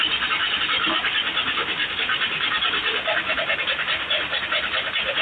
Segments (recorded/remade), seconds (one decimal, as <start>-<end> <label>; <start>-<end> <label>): 0.0-5.2 recorded